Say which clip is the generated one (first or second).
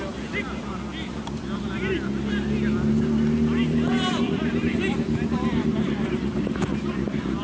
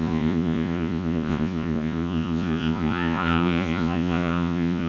second